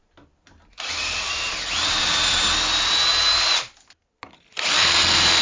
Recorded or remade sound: recorded